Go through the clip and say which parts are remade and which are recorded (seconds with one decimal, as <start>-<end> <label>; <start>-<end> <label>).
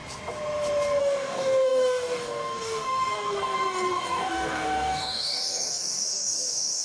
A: 0.0-1.0 recorded; 1.0-6.8 remade